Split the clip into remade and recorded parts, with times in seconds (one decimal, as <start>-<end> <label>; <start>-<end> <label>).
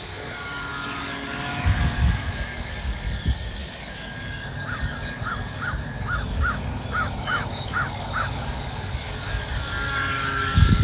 0.0-10.8 remade